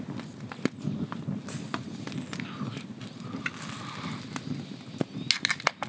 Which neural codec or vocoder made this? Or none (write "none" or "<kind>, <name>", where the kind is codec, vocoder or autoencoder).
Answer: none